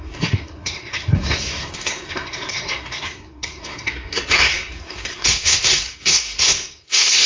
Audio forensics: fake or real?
fake